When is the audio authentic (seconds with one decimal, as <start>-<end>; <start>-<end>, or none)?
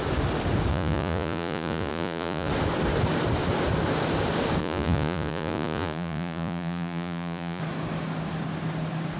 0.0-0.7; 2.5-4.6; 7.6-9.2